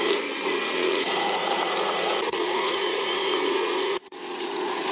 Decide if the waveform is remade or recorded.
remade